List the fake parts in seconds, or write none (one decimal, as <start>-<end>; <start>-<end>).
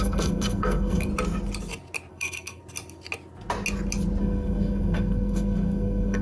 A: 0.0-1.1; 2.1-2.6; 4.2-6.2